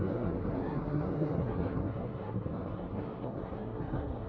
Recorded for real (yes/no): no